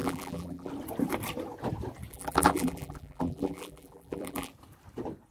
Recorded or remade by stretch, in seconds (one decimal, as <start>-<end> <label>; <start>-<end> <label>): 0.0-0.7 remade; 0.7-2.1 recorded; 2.1-4.5 remade; 4.5-5.3 recorded

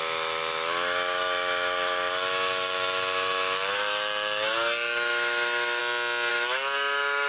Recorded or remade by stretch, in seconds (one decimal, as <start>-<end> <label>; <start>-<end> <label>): 0.0-5.8 remade; 5.8-6.3 recorded; 6.3-7.3 remade

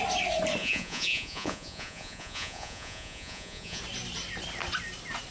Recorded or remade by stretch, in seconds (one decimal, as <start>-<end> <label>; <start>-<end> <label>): 0.0-0.6 recorded; 0.6-3.8 remade; 3.8-5.3 recorded